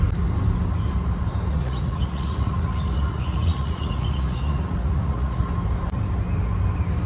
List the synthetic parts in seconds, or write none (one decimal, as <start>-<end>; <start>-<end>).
1.5-5.4